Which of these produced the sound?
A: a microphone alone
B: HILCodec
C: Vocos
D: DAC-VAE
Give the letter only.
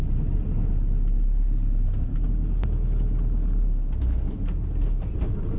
A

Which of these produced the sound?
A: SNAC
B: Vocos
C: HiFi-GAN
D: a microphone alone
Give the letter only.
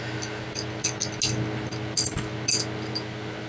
D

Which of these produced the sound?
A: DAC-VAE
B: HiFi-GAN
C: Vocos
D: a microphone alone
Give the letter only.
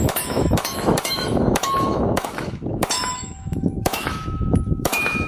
A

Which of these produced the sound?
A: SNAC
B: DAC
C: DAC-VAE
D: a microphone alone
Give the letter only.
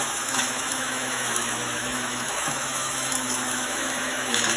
C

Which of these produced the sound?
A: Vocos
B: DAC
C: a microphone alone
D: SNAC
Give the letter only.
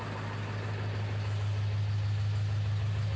C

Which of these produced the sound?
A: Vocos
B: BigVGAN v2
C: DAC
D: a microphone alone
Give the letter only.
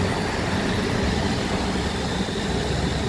D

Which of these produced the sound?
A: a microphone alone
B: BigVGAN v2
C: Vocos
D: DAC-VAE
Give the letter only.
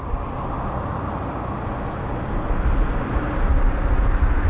A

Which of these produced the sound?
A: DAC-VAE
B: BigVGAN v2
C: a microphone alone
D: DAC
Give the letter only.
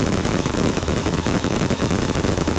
A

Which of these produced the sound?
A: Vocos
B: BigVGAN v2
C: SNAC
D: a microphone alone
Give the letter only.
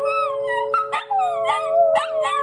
D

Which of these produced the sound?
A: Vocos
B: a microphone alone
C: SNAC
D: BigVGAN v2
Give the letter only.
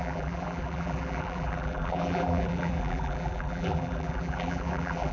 D